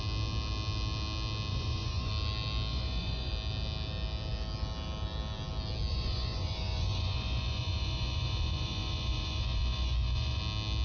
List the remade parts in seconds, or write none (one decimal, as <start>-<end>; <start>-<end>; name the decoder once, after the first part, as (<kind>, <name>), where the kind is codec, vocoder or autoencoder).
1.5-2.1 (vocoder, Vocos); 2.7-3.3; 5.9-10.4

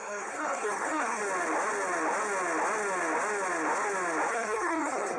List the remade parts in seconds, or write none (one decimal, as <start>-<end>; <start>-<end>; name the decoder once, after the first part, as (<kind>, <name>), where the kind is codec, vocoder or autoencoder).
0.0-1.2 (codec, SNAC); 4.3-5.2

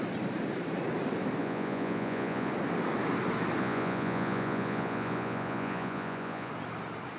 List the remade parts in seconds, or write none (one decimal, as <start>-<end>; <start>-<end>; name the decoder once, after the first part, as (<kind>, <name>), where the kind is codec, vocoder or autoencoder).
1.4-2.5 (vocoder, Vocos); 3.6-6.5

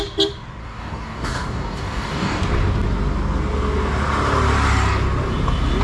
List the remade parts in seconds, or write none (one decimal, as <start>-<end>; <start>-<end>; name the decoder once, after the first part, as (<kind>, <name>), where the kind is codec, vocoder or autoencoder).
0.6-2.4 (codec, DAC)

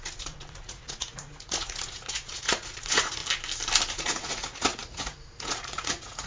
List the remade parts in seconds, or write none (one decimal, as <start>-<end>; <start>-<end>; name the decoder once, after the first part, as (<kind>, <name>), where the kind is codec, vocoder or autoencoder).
0.0-3.2 (vocoder, Vocos); 3.9-6.3

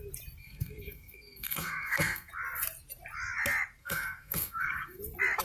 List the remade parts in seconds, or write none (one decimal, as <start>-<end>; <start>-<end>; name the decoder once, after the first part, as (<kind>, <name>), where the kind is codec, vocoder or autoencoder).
0.4-2.3 (codec, SNAC); 3.8-5.0